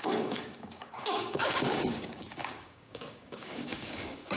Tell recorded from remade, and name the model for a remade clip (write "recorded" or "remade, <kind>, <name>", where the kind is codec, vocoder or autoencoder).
remade, codec, DAC